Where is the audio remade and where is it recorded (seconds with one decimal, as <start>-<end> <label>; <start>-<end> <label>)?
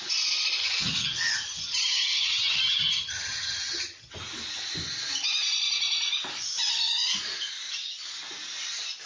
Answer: 0.0-0.6 recorded; 0.6-4.1 remade; 4.1-9.1 recorded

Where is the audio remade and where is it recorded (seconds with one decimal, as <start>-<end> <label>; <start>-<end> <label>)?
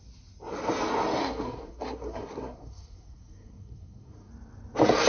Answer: 0.0-1.2 recorded; 1.2-4.3 remade; 4.3-5.1 recorded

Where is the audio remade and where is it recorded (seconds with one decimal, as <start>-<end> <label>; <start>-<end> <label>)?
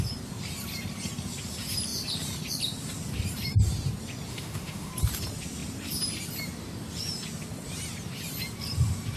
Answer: 0.0-4.3 recorded; 4.3-4.9 remade; 4.9-9.2 recorded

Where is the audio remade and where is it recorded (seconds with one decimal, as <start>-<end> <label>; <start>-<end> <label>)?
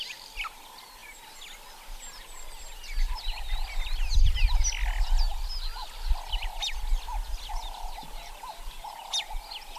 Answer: 0.0-9.8 recorded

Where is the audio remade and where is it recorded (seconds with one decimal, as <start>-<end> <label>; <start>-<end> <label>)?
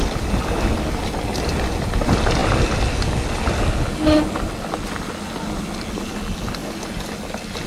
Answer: 0.0-7.7 recorded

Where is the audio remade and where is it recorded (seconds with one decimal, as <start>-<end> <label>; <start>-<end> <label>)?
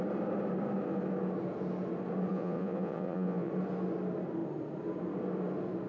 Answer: 0.0-2.3 recorded; 2.3-3.5 remade; 3.5-5.9 recorded